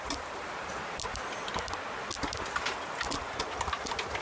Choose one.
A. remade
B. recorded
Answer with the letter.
B